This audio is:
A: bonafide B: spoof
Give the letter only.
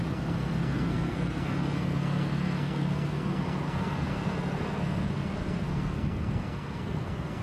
B